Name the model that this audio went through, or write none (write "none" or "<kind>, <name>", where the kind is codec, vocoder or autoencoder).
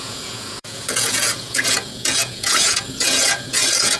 vocoder, Vocos